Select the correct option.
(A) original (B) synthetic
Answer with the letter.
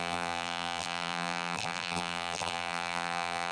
B